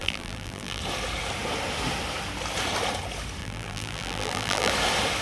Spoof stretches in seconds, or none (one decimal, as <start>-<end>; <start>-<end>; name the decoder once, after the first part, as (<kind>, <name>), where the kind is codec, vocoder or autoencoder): 0.0-0.8 (vocoder, BigVGAN v2); 3.4-4.7